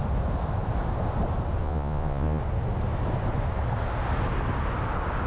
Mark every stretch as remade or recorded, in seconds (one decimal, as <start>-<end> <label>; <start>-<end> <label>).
0.0-1.6 recorded; 1.6-2.4 remade; 2.4-5.3 recorded

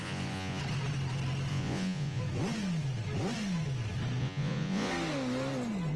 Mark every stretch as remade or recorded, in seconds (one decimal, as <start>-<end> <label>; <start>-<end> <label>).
0.0-0.6 remade; 0.6-1.5 recorded; 1.5-2.2 remade; 2.2-4.2 recorded; 4.2-4.9 remade; 4.9-6.0 recorded

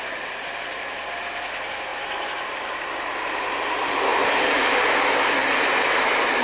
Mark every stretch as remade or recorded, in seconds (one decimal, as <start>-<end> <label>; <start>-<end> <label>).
0.0-1.9 recorded; 1.9-2.7 remade; 2.7-4.1 recorded; 4.1-5.0 remade; 5.0-6.4 recorded

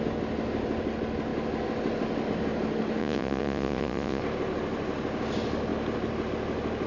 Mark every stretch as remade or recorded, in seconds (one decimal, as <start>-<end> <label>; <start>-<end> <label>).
0.0-3.0 recorded; 3.0-4.2 remade; 4.2-6.9 recorded

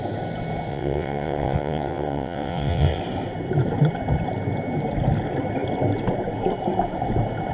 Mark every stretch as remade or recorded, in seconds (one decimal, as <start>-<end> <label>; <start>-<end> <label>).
0.0-0.7 recorded; 0.7-3.0 remade; 3.0-7.5 recorded

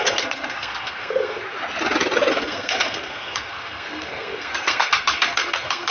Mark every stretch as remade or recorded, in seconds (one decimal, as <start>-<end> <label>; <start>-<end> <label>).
0.0-1.4 remade; 1.4-2.3 recorded; 2.3-5.9 remade

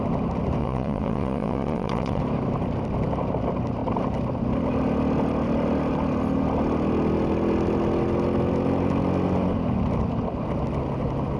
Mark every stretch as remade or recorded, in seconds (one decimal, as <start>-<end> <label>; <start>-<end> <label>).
0.0-0.6 recorded; 0.6-2.2 remade; 2.2-11.4 recorded